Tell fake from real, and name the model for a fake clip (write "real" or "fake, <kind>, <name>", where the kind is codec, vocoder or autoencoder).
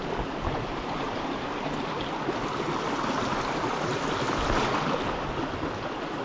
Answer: real